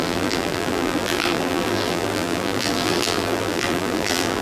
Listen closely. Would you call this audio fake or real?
fake